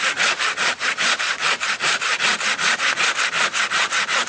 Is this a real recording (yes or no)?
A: yes